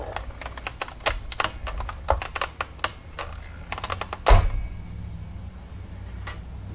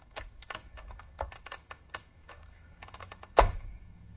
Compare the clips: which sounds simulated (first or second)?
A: second